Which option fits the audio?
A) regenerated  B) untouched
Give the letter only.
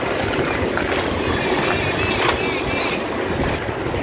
B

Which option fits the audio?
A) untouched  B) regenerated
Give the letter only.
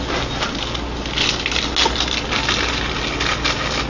A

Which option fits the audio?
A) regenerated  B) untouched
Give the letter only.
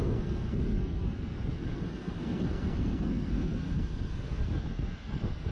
A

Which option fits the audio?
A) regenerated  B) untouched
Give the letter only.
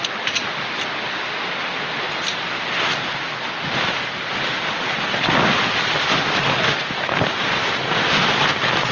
B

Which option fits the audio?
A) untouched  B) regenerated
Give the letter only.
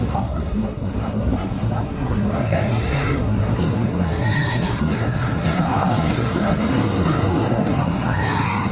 B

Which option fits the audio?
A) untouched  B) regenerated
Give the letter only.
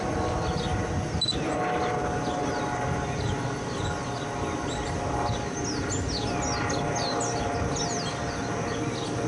A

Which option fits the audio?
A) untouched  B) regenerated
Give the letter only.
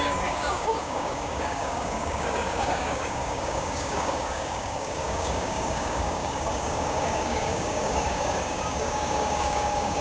B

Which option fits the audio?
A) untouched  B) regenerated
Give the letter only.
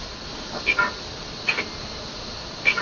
A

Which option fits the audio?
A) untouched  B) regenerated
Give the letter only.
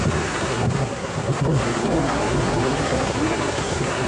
B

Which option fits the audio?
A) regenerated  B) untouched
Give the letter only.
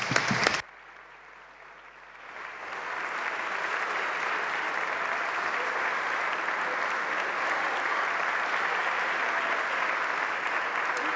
B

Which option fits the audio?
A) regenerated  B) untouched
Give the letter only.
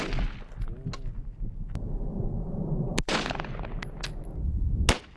B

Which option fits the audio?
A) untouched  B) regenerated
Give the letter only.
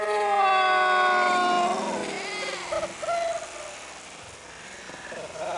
A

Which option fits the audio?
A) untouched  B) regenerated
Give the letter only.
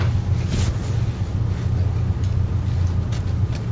A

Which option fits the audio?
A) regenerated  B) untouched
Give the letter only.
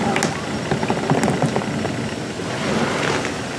B